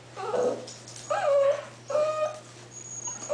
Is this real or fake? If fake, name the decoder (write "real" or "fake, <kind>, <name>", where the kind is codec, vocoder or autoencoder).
real